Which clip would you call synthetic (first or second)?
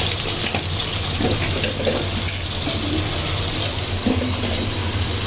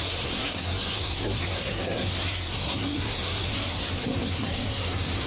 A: second